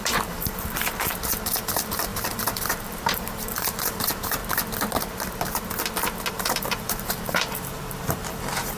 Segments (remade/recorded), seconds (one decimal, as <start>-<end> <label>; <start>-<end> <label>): 0.0-4.4 remade; 4.4-6.3 recorded; 6.3-8.8 remade